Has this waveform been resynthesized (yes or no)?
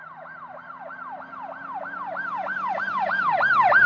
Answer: yes